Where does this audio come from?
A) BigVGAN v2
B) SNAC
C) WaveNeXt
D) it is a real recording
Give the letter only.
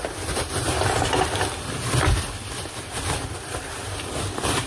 D